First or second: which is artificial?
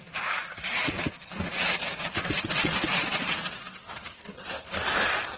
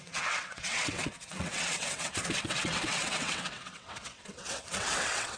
second